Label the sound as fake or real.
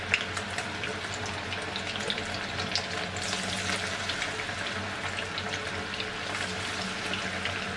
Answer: real